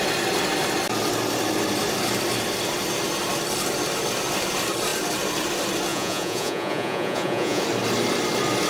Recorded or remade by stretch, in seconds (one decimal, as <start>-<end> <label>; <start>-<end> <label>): 0.0-5.9 recorded; 5.9-7.6 remade; 7.6-8.7 recorded